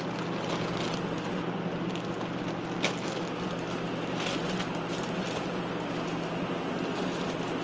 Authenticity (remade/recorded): recorded